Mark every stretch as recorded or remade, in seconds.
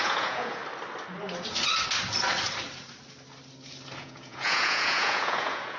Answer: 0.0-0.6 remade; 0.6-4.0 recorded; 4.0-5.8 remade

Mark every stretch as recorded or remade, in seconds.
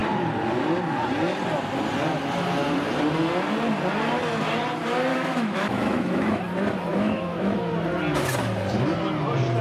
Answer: 0.0-5.1 recorded; 5.1-6.4 remade; 6.4-6.9 recorded; 6.9-7.6 remade; 7.6-9.6 recorded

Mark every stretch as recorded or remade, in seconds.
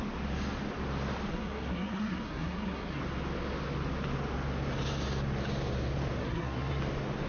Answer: 0.0-1.3 recorded; 1.3-3.0 remade; 3.0-6.2 recorded; 6.2-6.8 remade; 6.8-7.3 recorded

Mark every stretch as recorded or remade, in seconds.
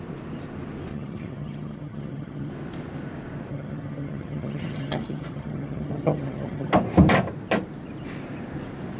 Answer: 0.0-0.9 recorded; 0.9-2.5 remade; 2.5-3.5 recorded; 3.5-6.7 remade; 6.7-9.0 recorded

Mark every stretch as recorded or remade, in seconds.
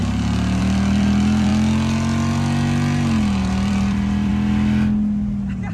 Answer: 0.0-0.6 recorded; 0.6-1.5 remade; 1.5-3.4 recorded; 3.4-4.3 remade; 4.3-5.7 recorded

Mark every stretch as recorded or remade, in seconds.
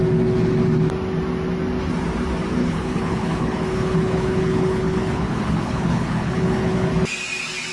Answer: 0.0-2.6 recorded; 2.6-6.9 remade; 6.9-7.7 recorded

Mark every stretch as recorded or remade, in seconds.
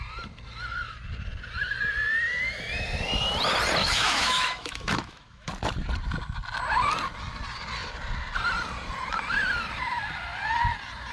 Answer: 0.0-3.8 recorded; 3.8-5.5 remade; 5.5-11.1 recorded